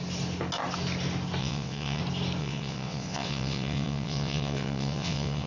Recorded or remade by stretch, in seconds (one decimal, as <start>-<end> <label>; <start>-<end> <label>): 0.0-1.4 recorded; 1.4-2.0 remade; 2.0-2.4 recorded; 2.4-5.5 remade